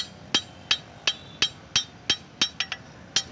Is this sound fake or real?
real